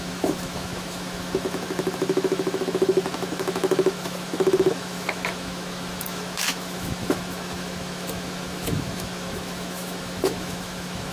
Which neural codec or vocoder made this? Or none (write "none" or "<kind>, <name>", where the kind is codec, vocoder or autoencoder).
autoencoder, DAC-VAE